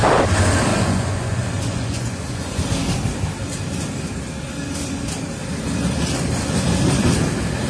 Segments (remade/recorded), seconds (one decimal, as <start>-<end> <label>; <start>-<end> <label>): 0.0-0.7 recorded; 0.7-2.6 remade; 2.6-7.7 recorded